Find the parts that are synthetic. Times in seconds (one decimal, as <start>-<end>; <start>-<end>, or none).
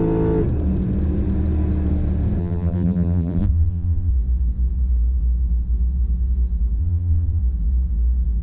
2.4-4.1; 6.8-7.4